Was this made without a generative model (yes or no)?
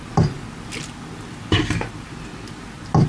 yes